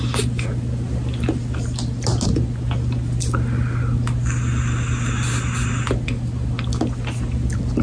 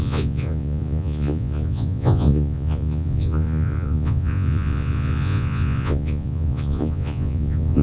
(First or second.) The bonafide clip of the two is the first